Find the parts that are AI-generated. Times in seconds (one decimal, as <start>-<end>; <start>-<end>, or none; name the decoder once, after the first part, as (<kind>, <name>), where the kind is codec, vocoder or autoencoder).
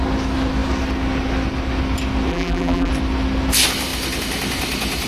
2.3-2.9 (vocoder, BigVGAN v2)